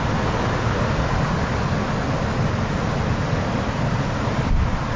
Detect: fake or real real